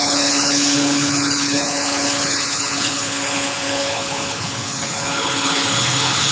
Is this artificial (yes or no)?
yes